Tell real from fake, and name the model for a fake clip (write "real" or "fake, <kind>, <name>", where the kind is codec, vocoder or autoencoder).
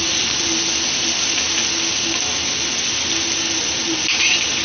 real